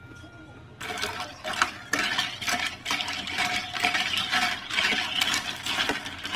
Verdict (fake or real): real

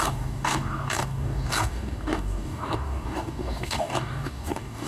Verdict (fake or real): fake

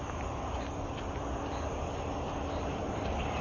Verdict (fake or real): real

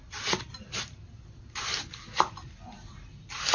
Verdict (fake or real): real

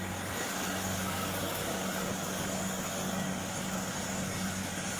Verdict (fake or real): fake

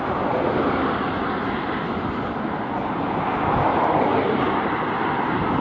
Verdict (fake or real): real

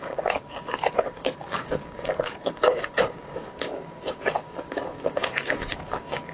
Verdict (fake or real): fake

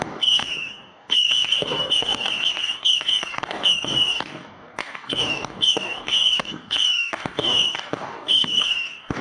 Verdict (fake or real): fake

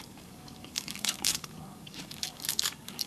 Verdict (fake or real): fake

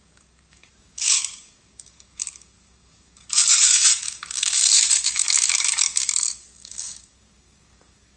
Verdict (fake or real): fake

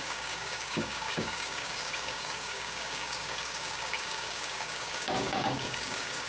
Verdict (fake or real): fake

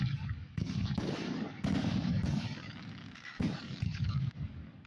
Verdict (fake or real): fake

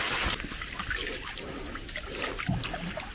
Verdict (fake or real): real